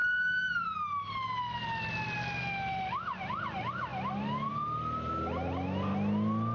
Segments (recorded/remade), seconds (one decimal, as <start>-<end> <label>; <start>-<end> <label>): 0.0-6.5 recorded